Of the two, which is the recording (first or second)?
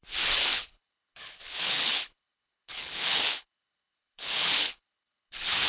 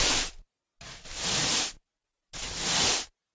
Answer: second